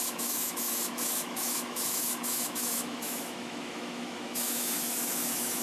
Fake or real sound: fake